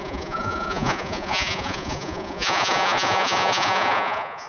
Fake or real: fake